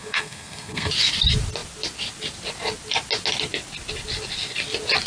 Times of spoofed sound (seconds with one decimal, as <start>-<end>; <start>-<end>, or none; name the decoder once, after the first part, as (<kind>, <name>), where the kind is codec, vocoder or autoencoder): 0.0-0.9 (codec, SNAC)